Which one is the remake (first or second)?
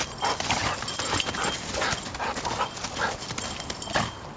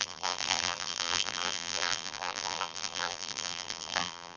second